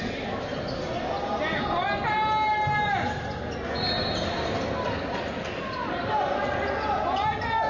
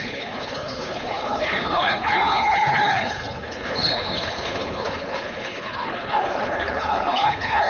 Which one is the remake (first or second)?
second